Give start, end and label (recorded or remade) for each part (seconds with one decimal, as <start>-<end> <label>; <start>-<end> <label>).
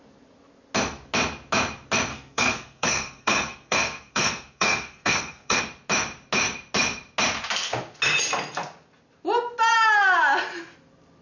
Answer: 0.0-2.1 recorded; 2.1-5.6 remade; 5.6-11.2 recorded